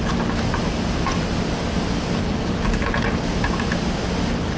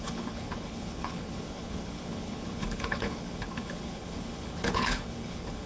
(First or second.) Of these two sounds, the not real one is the second